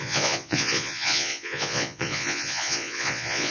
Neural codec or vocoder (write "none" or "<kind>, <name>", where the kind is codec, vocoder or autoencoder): vocoder, Vocos